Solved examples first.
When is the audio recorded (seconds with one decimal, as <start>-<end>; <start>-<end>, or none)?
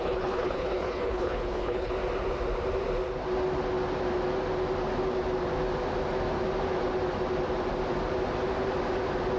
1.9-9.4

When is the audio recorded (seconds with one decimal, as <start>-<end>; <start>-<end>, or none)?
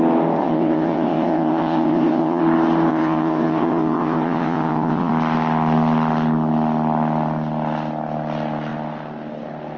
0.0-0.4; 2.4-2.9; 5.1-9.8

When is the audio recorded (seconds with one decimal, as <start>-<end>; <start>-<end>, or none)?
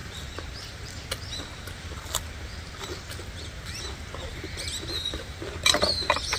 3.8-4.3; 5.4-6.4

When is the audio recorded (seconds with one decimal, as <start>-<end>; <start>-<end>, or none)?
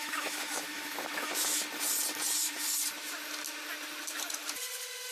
1.6-5.1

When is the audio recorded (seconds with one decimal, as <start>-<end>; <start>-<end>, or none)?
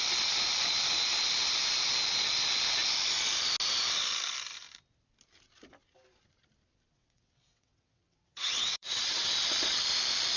0.0-7.0; 9.3-10.4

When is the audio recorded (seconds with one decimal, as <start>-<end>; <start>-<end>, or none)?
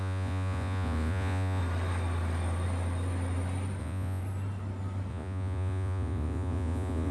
1.6-3.8; 4.2-5.1